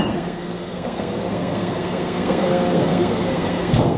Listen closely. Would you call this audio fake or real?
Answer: fake